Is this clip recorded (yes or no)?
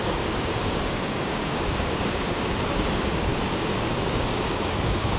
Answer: no